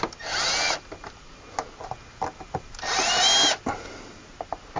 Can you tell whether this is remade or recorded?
recorded